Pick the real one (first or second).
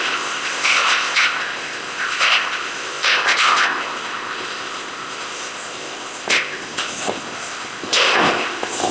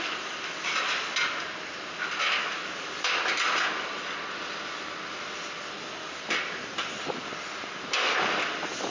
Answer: second